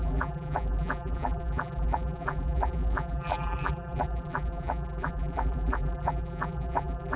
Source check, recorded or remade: remade